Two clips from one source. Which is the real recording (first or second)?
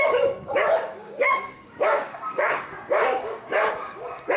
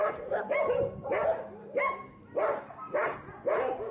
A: second